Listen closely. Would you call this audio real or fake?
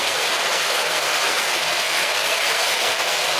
fake